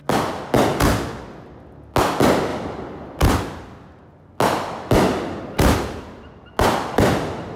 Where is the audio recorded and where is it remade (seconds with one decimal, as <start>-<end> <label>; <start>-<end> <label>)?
0.0-7.6 recorded